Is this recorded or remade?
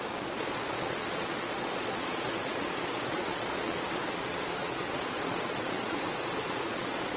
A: remade